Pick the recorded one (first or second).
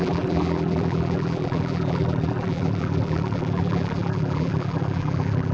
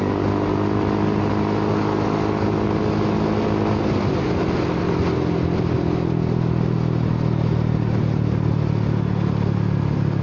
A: second